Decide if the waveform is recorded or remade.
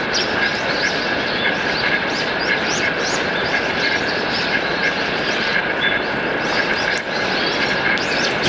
recorded